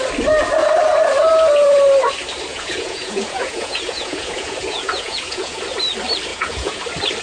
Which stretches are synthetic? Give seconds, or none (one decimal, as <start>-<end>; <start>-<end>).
2.5-5.6; 6.3-6.8